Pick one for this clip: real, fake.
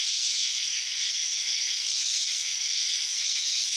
fake